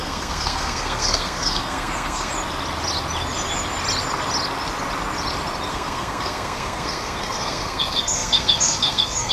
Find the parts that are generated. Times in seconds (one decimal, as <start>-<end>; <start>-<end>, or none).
0.0-2.3; 5.7-9.3